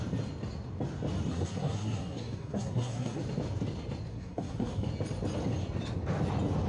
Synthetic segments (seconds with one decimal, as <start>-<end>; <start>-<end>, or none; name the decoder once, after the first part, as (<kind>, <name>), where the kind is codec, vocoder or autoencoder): 1.3-3.2 (codec, SNAC); 4.1-4.9